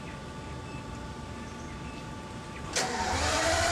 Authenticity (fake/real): real